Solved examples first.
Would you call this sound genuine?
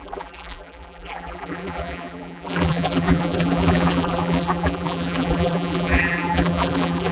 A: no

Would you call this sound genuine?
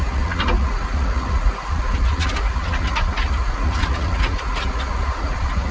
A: no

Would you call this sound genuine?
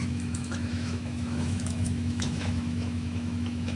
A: no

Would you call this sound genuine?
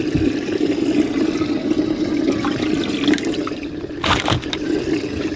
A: yes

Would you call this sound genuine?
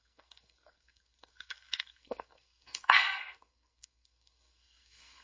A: no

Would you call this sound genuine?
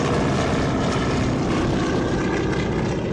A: yes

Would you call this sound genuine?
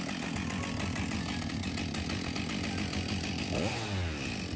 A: yes